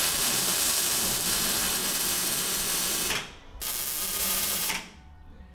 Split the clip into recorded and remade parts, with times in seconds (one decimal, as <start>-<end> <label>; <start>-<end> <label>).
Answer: 0.0-1.8 remade; 1.8-4.2 recorded; 4.2-5.5 remade